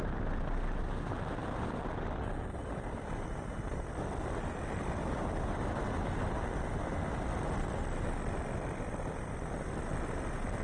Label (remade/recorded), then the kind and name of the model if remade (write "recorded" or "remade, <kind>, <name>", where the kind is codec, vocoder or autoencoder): recorded